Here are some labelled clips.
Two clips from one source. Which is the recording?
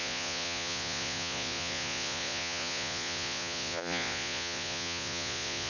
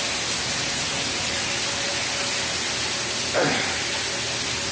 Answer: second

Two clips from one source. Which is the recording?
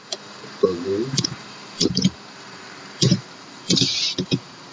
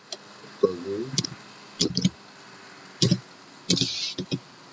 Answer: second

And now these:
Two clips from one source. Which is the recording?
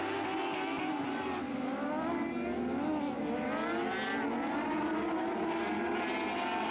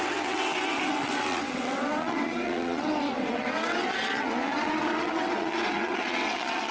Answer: first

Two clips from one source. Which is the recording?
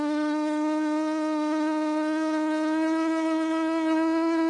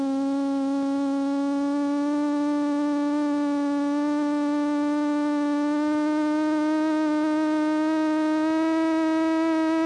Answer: second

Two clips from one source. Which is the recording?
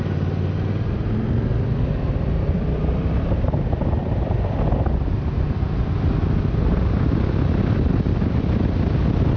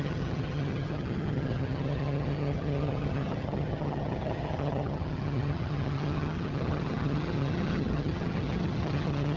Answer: first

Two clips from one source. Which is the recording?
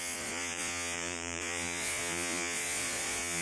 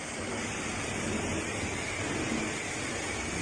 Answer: second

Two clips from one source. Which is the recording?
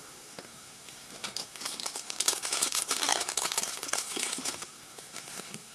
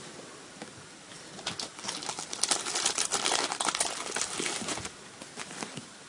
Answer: second